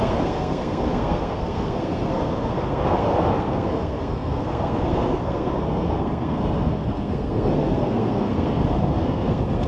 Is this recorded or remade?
remade